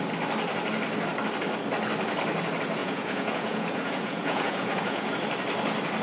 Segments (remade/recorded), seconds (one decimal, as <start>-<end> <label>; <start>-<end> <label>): 0.0-2.8 recorded; 2.8-5.1 remade; 5.1-6.0 recorded